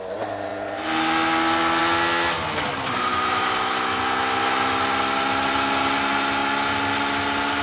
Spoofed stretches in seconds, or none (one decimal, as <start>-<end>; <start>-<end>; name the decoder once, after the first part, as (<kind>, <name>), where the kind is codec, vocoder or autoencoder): 3.1-4.0 (autoencoder, DAC-VAE)